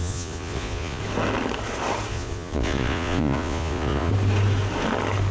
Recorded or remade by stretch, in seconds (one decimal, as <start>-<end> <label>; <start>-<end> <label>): 0.0-1.0 remade; 1.0-2.1 recorded; 2.1-4.1 remade; 4.1-5.3 recorded